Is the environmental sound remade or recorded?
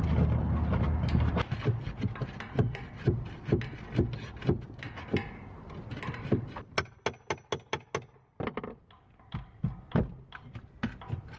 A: recorded